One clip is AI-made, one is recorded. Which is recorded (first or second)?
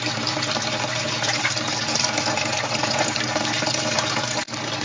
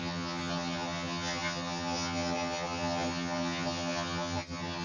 first